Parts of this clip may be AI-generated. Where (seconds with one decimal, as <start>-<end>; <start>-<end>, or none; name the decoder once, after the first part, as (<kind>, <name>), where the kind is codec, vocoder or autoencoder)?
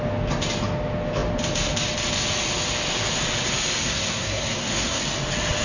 3.8-5.0 (codec, SNAC)